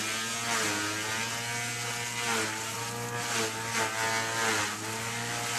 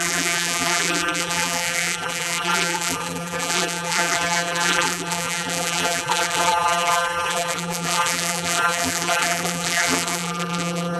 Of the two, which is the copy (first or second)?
second